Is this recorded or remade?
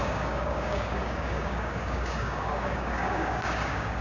remade